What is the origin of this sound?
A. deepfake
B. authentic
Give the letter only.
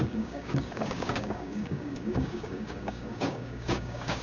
A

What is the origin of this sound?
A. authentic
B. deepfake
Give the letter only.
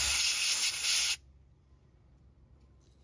A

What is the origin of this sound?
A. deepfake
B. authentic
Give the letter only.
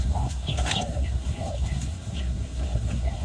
A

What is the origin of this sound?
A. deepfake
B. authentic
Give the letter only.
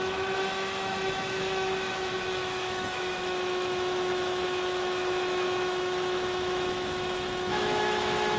A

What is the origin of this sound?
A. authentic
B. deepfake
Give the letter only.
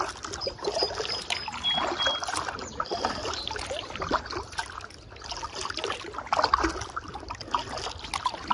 A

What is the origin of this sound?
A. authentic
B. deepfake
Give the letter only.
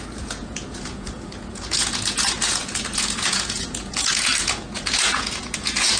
B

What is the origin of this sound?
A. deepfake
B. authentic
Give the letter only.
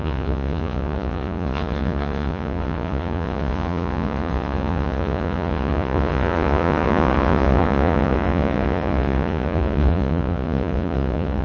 A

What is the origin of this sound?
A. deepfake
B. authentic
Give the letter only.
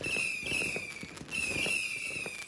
B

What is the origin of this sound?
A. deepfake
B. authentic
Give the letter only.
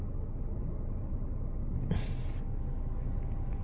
B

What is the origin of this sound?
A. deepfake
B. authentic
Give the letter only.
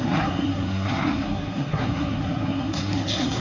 A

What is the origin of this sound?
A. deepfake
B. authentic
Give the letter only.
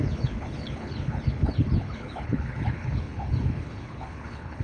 A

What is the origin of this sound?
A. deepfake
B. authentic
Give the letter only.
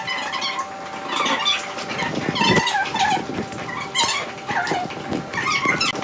B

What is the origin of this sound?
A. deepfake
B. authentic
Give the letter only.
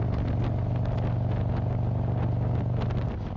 B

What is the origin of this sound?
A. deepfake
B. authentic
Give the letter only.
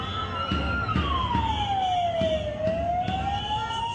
B